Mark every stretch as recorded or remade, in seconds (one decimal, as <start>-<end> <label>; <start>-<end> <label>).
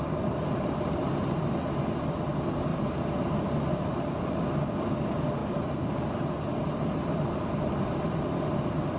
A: 0.0-5.4 recorded; 5.4-7.7 remade; 7.7-9.0 recorded